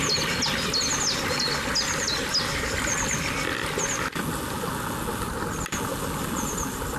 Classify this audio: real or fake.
real